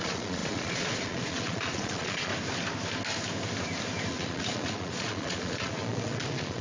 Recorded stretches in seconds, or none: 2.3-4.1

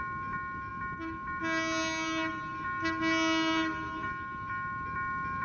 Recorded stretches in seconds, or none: 0.0-5.4

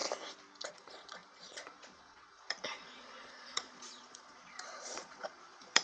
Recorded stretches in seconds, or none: 0.0-0.7

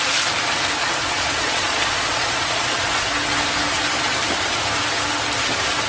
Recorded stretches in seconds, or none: 0.0-0.8; 3.1-5.9

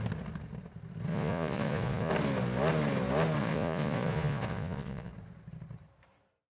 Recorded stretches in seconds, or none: 0.0-1.1; 2.1-3.4; 5.1-6.6

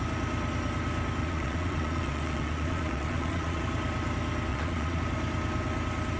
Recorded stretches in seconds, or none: 0.0-1.2; 3.6-4.5; 5.0-6.2

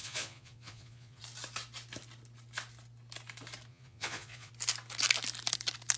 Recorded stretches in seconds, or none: 1.2-3.7; 4.5-6.0